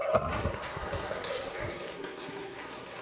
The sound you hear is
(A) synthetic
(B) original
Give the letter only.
A